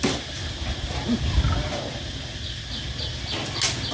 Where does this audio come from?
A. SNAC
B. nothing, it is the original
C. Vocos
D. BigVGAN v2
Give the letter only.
B